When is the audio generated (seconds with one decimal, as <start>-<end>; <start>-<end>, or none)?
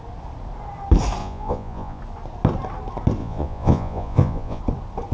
1.2-2.0; 3.2-4.6